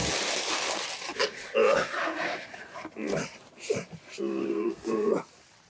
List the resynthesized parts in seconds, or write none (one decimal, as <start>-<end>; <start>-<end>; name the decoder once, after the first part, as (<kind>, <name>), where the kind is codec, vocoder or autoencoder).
4.4-5.1 (codec, SNAC)